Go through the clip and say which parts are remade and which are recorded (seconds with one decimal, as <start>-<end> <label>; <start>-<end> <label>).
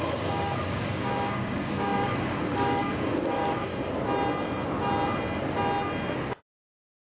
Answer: 0.0-3.7 remade; 3.7-6.4 recorded; 6.4-7.2 remade